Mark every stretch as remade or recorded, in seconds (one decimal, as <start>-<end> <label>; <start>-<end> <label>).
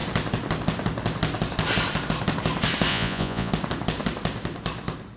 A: 0.0-2.9 recorded; 2.9-3.5 remade; 3.5-5.2 recorded